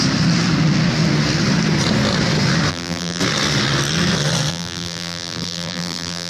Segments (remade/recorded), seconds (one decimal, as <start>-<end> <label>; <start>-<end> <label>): 0.0-2.7 recorded; 2.7-3.2 remade; 3.2-4.5 recorded; 4.5-6.3 remade